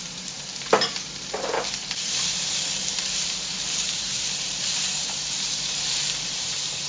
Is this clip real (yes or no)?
no